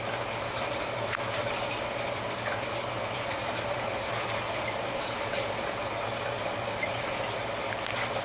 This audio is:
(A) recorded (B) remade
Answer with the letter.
A